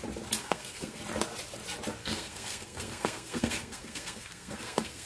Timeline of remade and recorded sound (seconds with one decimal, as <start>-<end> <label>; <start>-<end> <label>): 0.0-0.4 recorded; 0.4-1.0 remade; 1.0-2.0 recorded; 2.0-5.1 remade